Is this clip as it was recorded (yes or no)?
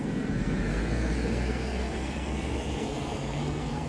no